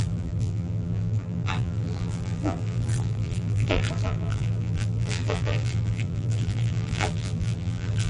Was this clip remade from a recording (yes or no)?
yes